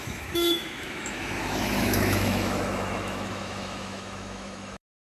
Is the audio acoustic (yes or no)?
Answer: no